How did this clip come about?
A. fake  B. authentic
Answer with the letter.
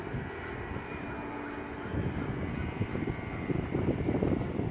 B